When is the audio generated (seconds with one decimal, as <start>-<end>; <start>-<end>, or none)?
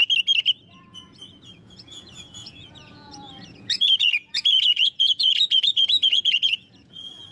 0.7-7.3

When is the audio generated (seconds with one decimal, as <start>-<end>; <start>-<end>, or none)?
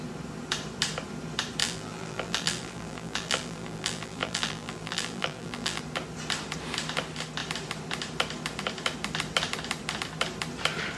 1.6-5.8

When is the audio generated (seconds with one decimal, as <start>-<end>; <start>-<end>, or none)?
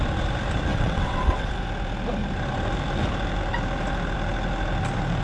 0.7-1.5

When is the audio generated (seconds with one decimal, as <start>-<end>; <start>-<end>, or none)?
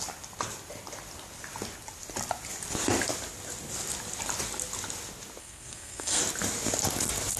5.4-6.2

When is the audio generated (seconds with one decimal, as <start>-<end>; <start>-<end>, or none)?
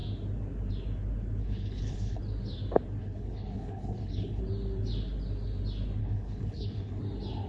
1.4-2.2; 3.0-4.4; 6.0-7.0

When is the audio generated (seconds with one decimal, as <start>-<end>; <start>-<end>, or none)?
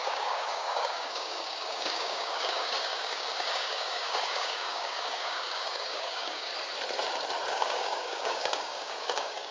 0.0-6.5; 7.5-9.5